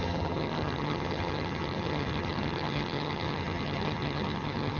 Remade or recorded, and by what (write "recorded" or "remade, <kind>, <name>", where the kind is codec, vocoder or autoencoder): remade, vocoder, HiFi-GAN